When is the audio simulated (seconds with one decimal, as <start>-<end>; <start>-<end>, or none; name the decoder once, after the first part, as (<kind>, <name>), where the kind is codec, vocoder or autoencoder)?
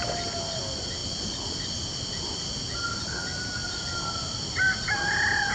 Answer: none